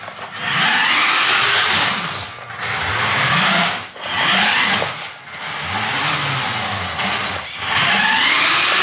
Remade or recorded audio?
recorded